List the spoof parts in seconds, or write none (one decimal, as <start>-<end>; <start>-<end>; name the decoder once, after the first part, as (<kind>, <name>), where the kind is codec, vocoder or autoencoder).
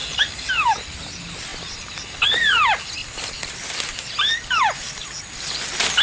1.5-2.4 (vocoder, BigVGAN v2); 3.0-5.6